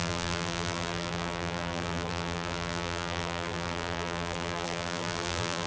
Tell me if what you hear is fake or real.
fake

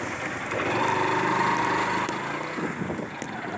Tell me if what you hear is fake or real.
real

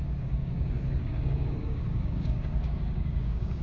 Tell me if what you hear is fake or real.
fake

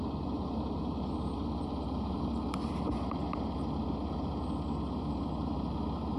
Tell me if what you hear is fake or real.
real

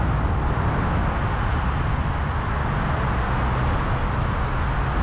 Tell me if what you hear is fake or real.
real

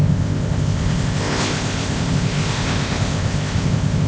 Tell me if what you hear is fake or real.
fake